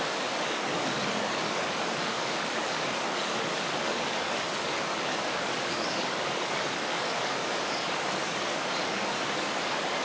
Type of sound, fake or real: fake